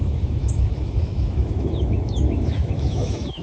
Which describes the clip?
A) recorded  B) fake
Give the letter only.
B